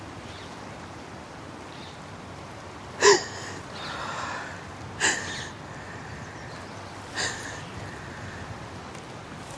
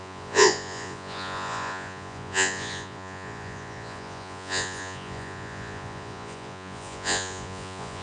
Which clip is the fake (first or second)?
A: second